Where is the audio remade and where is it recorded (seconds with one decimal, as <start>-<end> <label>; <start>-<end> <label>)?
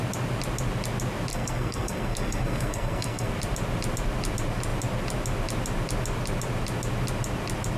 0.0-1.3 recorded; 1.3-3.3 remade; 3.3-7.8 recorded